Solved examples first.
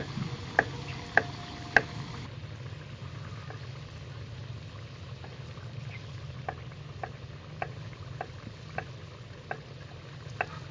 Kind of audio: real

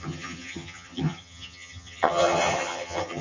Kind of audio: fake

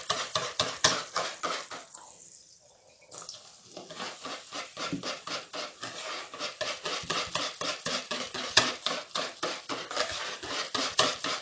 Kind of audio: real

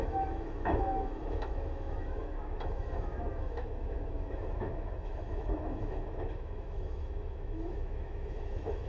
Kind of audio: fake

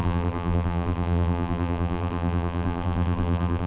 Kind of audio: fake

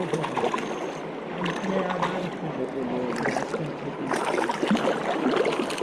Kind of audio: real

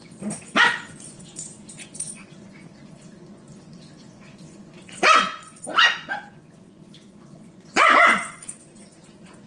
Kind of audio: fake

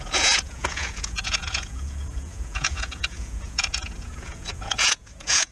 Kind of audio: fake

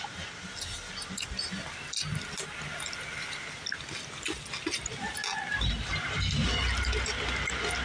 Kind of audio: real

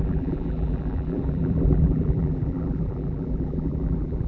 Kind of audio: fake